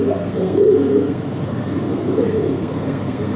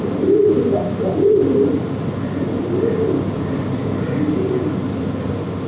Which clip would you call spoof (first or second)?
first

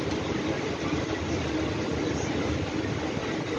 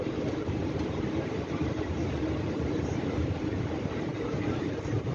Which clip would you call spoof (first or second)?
second